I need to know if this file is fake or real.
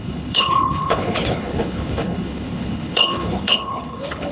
fake